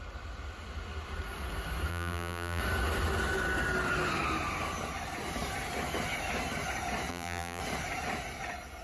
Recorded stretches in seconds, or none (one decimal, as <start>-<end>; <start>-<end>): 0.0-1.9; 2.6-7.1; 7.6-8.8